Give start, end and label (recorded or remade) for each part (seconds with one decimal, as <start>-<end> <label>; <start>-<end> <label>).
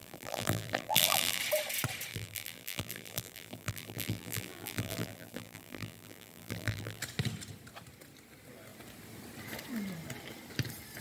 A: 0.0-1.4 remade; 1.4-2.1 recorded; 2.1-7.0 remade; 7.0-11.0 recorded